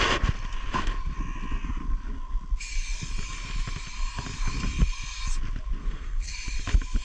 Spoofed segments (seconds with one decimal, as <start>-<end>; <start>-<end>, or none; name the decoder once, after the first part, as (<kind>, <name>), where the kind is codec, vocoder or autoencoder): 5.8-6.3 (codec, SNAC)